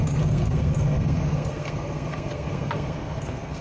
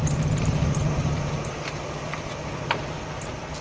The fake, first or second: first